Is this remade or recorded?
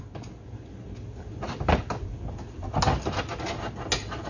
recorded